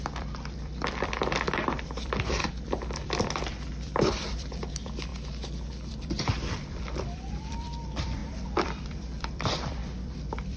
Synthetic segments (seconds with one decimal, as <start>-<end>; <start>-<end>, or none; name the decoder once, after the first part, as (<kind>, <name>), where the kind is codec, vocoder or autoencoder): 0.0-5.1 (vocoder, BigVGAN v2); 5.7-10.6